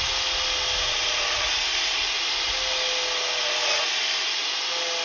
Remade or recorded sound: recorded